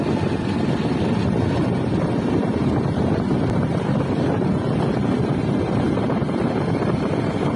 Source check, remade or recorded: recorded